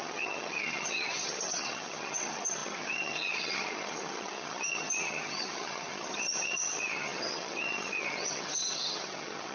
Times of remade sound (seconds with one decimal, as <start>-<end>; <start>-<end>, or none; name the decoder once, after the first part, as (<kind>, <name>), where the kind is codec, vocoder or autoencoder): 0.0-9.5 (vocoder, HiFi-GAN)